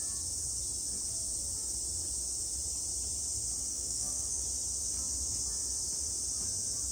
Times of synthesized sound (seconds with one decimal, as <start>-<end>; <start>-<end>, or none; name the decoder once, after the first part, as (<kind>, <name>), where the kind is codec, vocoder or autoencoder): 3.7-4.4 (codec, SNAC)

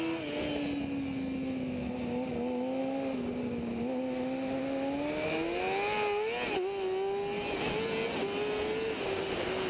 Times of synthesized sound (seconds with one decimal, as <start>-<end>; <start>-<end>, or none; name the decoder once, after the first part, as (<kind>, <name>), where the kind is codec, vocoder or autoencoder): none

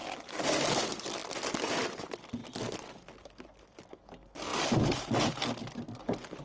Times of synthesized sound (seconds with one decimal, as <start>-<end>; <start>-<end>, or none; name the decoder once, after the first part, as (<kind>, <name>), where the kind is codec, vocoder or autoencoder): none

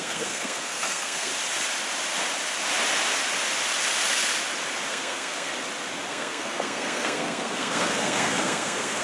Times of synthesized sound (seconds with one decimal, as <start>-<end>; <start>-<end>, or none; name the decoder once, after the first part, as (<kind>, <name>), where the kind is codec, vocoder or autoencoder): 0.0-1.3 (codec, SNAC); 4.9-5.5; 6.1-9.0

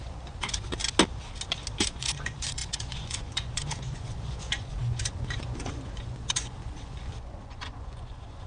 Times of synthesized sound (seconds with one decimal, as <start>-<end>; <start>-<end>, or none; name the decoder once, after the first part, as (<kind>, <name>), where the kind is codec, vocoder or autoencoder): 0.0-0.8 (vocoder, Vocos); 1.8-8.5

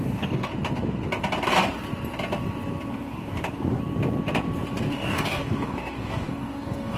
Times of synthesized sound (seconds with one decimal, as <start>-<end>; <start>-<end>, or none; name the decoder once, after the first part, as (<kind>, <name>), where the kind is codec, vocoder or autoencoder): 0.0-0.5 (codec, DAC); 2.9-3.8; 4.9-7.0

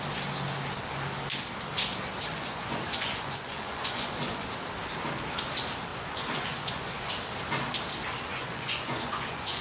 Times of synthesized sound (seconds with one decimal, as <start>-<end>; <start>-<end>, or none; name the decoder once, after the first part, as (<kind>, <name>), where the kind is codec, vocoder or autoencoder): 2.3-4.5 (vocoder, Vocos); 5.9-7.1; 8.3-9.6

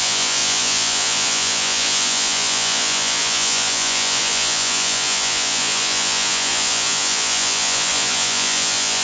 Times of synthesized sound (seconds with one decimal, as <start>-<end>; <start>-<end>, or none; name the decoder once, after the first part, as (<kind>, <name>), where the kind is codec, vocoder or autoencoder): 0.0-9.0 (vocoder, Vocos)